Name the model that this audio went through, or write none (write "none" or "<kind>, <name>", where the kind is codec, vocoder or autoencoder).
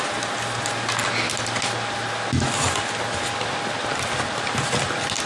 none